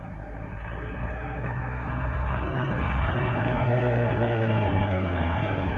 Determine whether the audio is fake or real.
fake